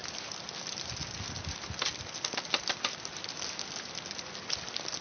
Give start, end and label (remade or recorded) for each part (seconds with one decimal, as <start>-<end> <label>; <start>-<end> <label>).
0.0-5.0 recorded